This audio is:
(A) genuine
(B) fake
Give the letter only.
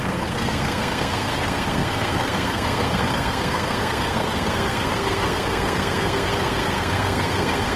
B